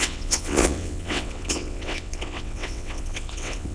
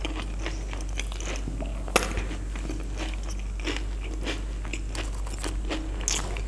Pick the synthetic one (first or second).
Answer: first